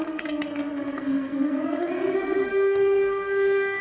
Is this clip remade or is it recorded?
remade